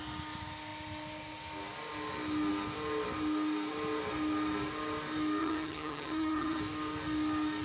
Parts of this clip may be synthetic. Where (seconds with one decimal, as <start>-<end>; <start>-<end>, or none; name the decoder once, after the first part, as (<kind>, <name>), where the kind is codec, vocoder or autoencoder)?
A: 5.4-6.6 (vocoder, HiFi-GAN)